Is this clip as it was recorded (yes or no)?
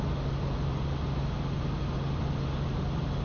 yes